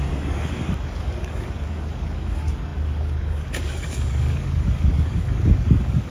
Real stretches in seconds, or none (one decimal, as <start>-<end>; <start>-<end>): none